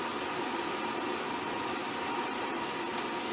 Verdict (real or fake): real